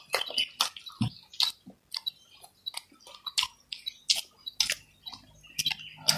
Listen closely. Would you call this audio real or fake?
real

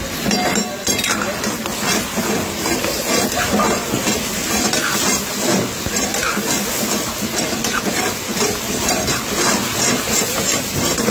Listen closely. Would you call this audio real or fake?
real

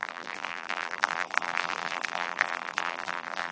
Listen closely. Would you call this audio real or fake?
fake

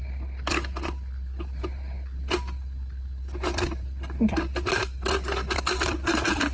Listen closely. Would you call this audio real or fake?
real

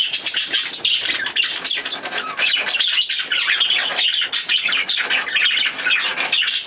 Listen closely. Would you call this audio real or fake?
real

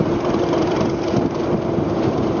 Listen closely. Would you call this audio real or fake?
fake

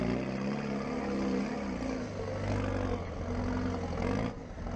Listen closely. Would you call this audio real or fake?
real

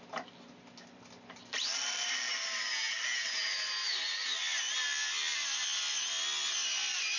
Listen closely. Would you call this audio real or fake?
real